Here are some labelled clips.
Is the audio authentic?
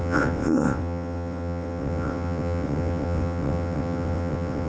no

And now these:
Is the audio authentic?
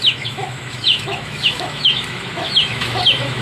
no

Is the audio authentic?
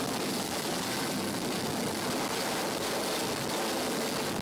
yes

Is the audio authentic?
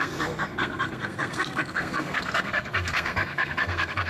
no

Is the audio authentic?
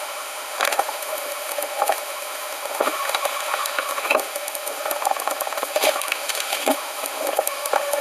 no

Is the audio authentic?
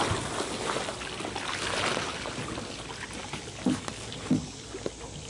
yes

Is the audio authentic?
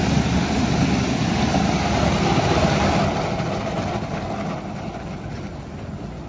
yes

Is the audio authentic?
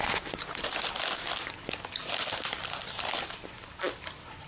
yes